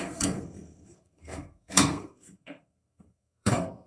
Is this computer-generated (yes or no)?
yes